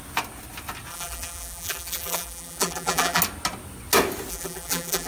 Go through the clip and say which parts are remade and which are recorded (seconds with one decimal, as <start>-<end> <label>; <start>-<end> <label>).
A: 0.0-0.9 recorded; 0.9-3.2 remade; 3.2-4.3 recorded; 4.3-5.1 remade